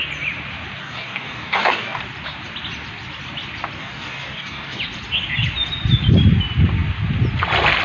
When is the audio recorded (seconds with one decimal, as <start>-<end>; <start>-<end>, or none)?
0.0-0.8; 2.0-3.8; 4.8-7.8

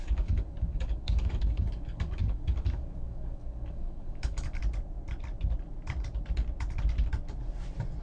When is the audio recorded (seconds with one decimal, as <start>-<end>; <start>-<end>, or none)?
4.6-8.0

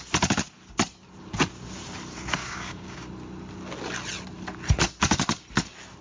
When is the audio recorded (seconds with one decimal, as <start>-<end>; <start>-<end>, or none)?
0.0-2.4; 3.1-6.0

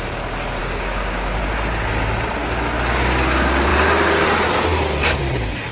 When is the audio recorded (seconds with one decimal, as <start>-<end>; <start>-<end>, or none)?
0.0-0.6; 1.4-5.7

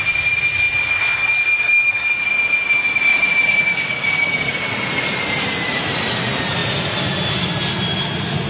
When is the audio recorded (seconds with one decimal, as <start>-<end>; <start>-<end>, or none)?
0.0-1.2; 2.2-3.6; 4.5-8.5

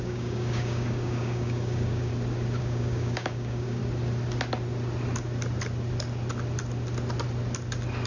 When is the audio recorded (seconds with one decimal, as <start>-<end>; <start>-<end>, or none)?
2.1-2.6; 3.8-8.1

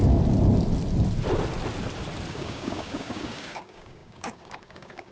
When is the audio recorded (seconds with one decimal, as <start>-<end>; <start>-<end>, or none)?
0.0-2.3